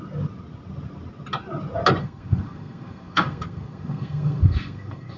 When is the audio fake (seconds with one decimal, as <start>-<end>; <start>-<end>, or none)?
2.0-5.2